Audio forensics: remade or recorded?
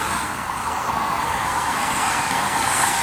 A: remade